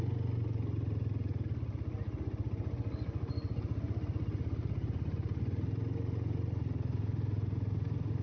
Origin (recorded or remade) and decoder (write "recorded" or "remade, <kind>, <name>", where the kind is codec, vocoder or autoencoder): recorded